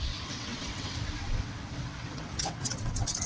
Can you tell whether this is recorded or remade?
remade